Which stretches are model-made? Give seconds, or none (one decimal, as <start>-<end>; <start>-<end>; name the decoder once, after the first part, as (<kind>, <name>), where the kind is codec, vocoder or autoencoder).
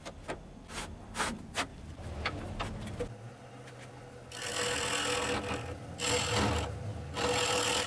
1.7-3.0 (vocoder, BigVGAN v2)